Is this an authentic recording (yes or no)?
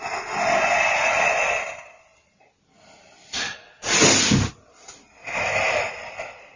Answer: yes